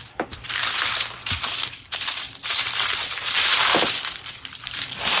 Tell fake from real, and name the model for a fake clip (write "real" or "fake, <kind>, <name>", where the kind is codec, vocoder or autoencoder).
fake, vocoder, BigVGAN v2